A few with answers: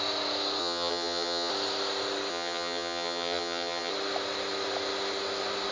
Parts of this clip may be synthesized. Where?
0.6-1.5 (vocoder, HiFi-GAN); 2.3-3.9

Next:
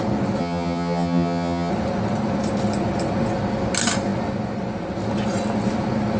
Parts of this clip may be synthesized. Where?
0.4-1.7 (vocoder, HiFi-GAN)

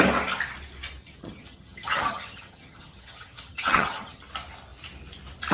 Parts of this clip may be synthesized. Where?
1.0-4.2 (vocoder, HiFi-GAN)

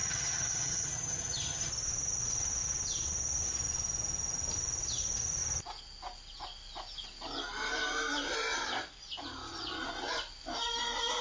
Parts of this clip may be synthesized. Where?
0.0-1.7 (vocoder, HiFi-GAN)

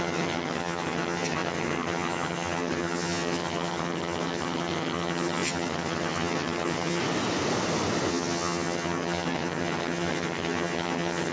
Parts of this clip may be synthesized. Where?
0.0-7.0 (vocoder, HiFi-GAN); 8.1-11.3

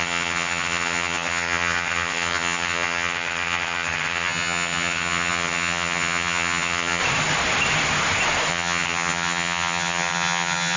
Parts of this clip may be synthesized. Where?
0.0-7.0 (vocoder, HiFi-GAN); 8.5-10.8

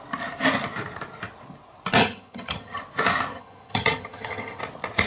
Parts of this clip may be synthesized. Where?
2.0-2.8 (vocoder, HiFi-GAN); 3.3-4.6